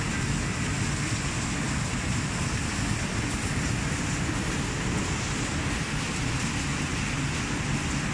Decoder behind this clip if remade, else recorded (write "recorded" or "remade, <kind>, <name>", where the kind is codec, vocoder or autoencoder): recorded